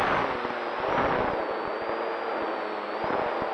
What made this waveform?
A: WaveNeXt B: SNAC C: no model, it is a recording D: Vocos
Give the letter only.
C